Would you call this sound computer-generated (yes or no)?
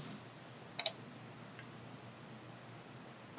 no